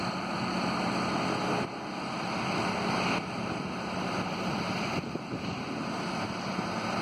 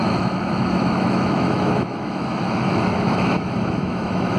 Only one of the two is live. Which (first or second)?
first